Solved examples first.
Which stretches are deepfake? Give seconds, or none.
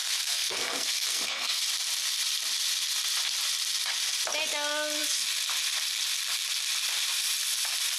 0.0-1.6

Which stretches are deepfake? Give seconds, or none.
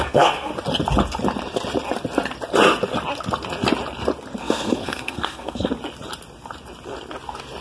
0.0-0.5; 4.4-5.7